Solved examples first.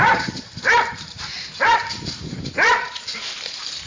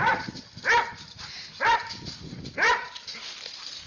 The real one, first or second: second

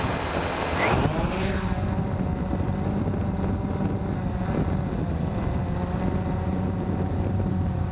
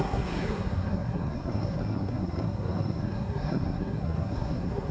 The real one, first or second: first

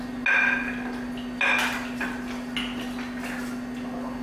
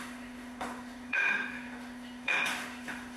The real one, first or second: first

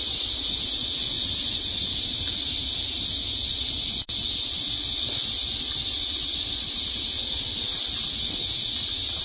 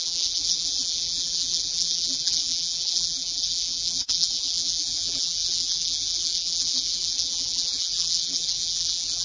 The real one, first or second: first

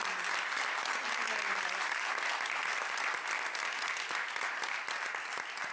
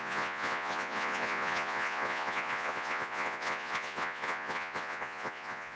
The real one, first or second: first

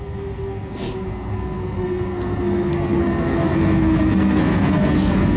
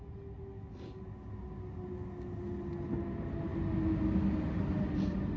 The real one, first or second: second